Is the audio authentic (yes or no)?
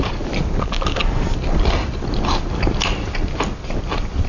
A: yes